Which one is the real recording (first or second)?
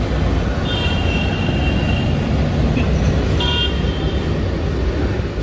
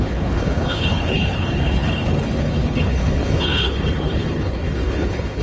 first